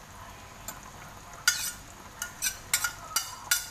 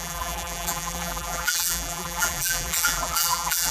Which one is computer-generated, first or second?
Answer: second